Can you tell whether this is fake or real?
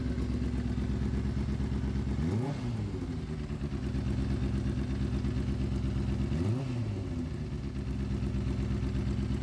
real